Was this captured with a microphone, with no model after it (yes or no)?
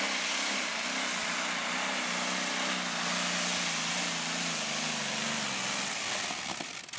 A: yes